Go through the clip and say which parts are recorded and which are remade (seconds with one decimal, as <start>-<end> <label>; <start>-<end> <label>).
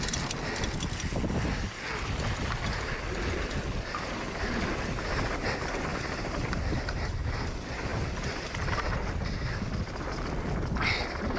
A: 0.0-5.9 recorded; 5.9-7.4 remade; 7.4-11.4 recorded